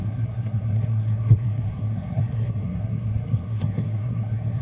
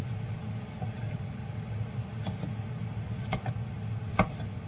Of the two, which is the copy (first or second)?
first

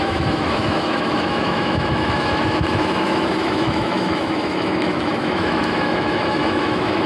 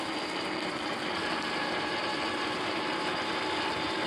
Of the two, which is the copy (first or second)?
first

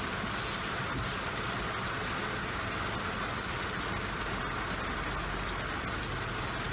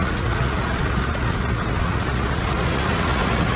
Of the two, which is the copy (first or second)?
second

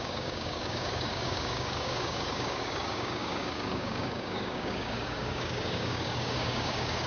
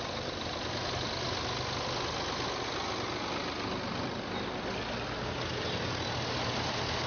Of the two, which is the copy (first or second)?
first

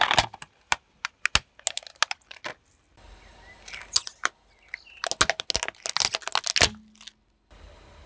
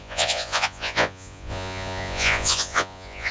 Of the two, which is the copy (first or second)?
second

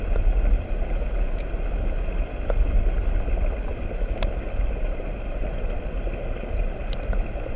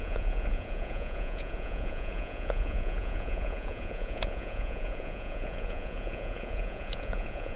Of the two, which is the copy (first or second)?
second